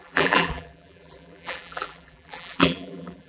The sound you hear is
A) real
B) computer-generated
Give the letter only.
B